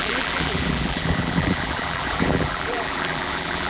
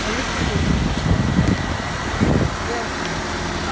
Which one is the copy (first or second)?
first